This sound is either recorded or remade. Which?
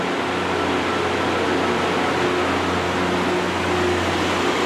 recorded